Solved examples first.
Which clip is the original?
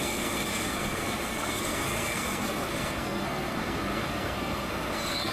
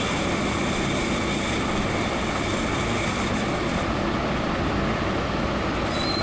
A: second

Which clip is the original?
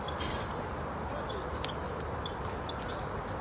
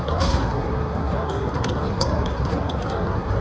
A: first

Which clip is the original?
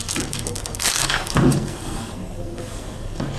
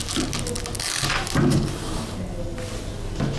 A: second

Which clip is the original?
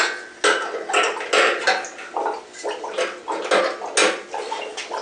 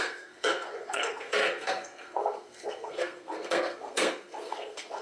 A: first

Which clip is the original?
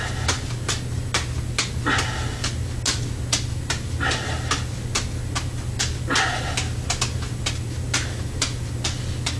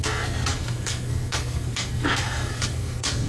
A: first